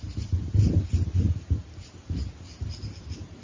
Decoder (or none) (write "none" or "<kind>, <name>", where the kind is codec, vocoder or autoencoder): none